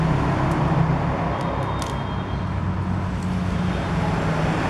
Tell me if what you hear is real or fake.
real